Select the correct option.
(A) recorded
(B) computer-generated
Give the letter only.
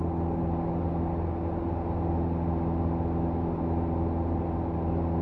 A